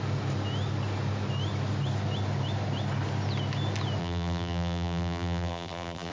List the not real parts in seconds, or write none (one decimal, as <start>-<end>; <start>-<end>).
4.0-6.1